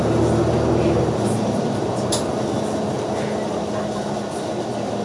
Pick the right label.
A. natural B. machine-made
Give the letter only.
A